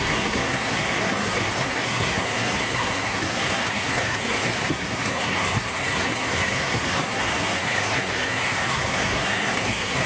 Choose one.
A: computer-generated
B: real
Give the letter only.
A